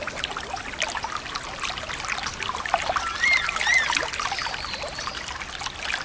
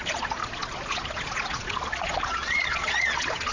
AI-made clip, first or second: second